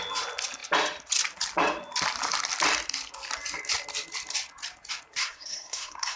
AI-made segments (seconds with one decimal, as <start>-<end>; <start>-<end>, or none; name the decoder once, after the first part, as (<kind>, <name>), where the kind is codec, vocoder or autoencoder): 5.2-6.2 (codec, SNAC)